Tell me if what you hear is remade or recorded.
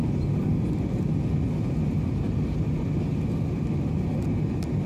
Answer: recorded